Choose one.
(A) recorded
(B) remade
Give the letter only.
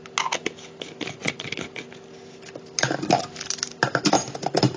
A